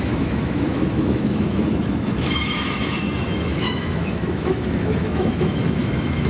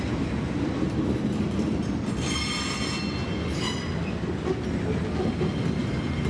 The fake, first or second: first